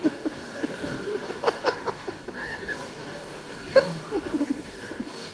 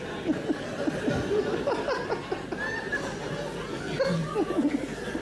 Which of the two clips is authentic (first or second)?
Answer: second